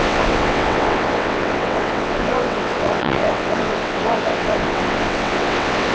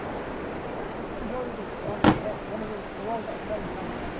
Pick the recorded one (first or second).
second